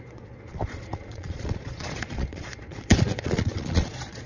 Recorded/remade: remade